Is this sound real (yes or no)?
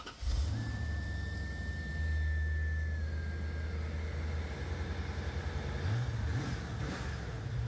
yes